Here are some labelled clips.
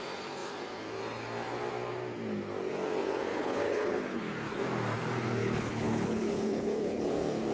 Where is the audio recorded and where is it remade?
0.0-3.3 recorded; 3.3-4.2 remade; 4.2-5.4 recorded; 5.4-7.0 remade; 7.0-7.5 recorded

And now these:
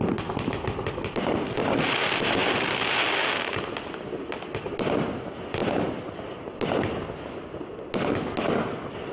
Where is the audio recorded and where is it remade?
0.0-9.1 recorded

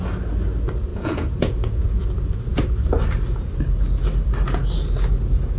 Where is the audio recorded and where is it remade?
0.0-0.9 recorded; 0.9-2.0 remade; 2.0-5.6 recorded

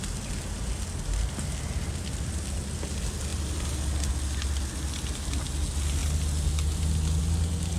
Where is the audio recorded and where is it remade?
0.0-7.8 recorded

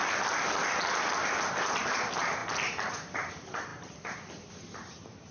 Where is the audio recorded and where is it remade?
0.0-1.6 recorded; 1.6-2.4 remade; 2.4-3.3 recorded; 3.3-5.3 remade

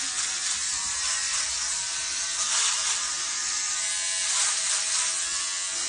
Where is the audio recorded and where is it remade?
0.0-5.9 recorded

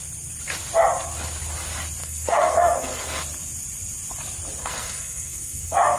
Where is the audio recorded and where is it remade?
0.0-2.0 recorded; 2.0-3.2 remade; 3.2-4.6 recorded; 4.6-6.0 remade

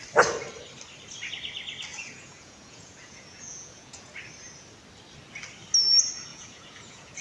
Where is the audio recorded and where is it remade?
0.0-1.9 recorded; 1.9-4.2 remade; 4.2-6.3 recorded; 6.3-7.2 remade